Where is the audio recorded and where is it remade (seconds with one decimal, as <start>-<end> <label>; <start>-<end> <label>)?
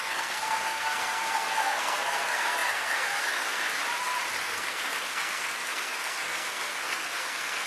0.0-3.8 remade; 3.8-4.4 recorded; 4.4-7.7 remade